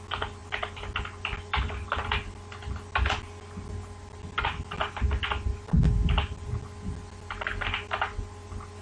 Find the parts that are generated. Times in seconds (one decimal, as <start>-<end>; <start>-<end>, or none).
none